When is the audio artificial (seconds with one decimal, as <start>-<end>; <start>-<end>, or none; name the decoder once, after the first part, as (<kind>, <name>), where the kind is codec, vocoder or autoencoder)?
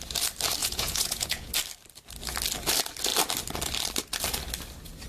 0.6-1.5 (vocoder, Vocos)